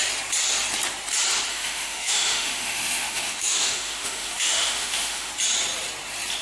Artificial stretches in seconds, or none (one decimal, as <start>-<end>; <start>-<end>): 1.5-5.3